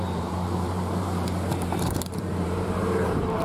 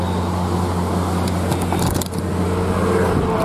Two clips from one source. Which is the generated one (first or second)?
first